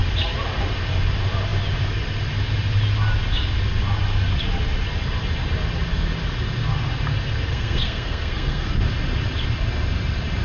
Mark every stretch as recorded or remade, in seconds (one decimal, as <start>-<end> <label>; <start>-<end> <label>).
0.0-7.5 recorded; 7.5-8.7 remade; 8.7-10.4 recorded